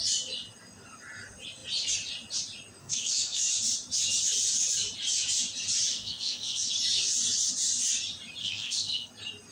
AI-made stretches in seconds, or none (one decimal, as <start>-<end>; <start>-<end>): 2.8-3.4; 5.9-6.7; 8.4-9.1